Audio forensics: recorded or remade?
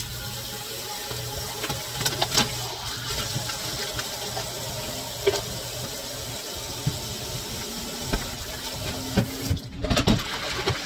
recorded